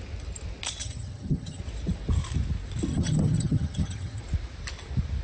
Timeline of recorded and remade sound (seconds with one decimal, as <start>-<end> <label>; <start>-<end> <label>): 0.0-0.8 recorded; 0.8-1.6 remade; 1.6-2.9 recorded; 2.9-4.2 remade; 4.2-5.2 recorded